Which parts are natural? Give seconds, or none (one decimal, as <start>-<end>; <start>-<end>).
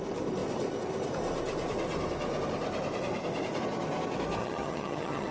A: 0.0-4.4